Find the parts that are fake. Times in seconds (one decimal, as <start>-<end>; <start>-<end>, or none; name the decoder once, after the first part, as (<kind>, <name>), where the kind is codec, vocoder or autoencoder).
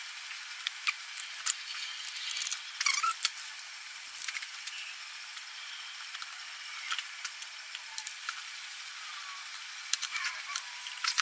2.7-4.9 (vocoder, BigVGAN v2); 5.7-11.2